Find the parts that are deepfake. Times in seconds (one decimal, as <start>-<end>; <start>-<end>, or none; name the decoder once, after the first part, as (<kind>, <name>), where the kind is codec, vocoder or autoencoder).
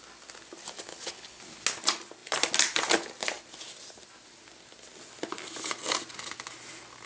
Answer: 0.9-1.4 (codec, HILCodec)